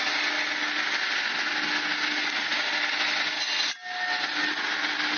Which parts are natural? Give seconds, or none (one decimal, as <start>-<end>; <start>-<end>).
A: 0.0-5.2